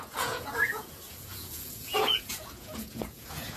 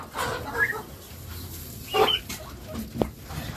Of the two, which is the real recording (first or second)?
second